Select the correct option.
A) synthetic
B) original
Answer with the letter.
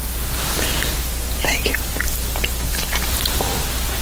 B